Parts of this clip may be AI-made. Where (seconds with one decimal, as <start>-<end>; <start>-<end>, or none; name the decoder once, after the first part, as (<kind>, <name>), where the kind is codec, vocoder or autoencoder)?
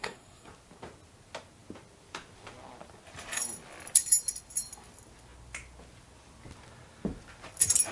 0.0-0.5 (codec, SNAC)